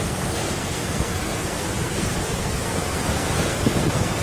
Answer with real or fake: fake